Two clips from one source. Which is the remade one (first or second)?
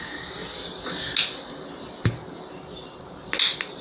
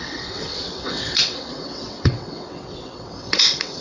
second